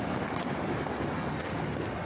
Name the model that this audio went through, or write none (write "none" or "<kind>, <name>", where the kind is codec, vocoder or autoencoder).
none